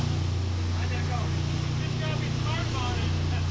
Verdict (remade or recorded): recorded